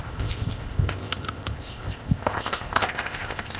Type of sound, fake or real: fake